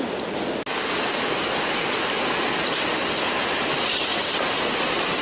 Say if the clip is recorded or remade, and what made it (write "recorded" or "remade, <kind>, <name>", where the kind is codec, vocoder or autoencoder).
recorded